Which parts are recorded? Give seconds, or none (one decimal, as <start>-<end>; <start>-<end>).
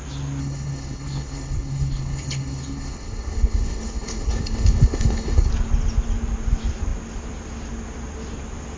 0.0-0.4; 5.5-8.8